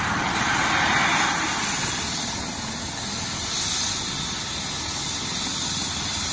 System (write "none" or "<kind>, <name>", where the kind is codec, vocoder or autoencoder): none